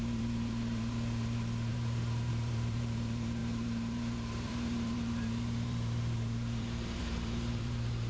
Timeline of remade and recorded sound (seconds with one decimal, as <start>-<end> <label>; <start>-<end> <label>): 0.0-8.1 remade

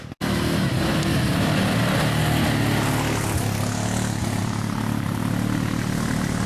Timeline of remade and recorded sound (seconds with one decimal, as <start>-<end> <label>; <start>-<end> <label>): 0.0-4.4 recorded; 4.4-5.2 remade; 5.2-6.5 recorded

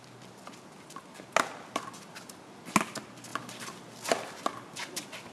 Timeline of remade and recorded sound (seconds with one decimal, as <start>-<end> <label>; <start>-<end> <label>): 0.0-5.3 recorded

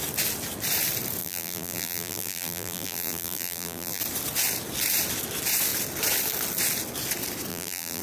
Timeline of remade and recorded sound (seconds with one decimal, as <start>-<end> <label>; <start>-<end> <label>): 0.0-1.2 recorded; 1.2-4.0 remade; 4.0-7.5 recorded; 7.5-8.0 remade